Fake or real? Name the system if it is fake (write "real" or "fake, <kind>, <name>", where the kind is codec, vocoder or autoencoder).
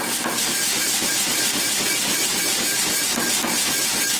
real